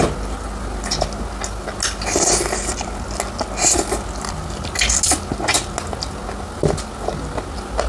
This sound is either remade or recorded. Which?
recorded